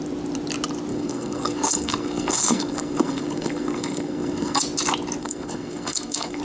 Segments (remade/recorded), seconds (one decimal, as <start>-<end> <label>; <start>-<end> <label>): 0.0-0.9 recorded; 0.9-4.6 remade; 4.6-5.2 recorded; 5.2-6.4 remade